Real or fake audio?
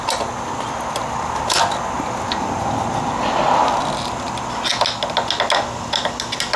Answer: real